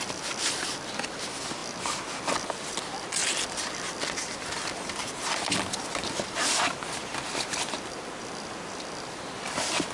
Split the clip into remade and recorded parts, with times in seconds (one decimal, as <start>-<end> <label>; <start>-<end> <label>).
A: 0.0-9.9 recorded